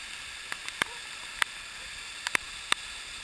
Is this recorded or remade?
recorded